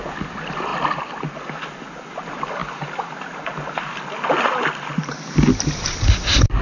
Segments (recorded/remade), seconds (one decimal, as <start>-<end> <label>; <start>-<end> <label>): 0.0-6.6 recorded